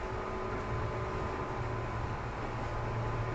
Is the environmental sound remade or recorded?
recorded